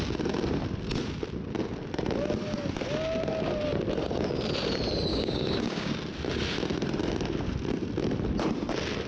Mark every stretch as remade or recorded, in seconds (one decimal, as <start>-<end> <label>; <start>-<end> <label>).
0.0-5.1 recorded; 5.1-5.9 remade; 5.9-9.1 recorded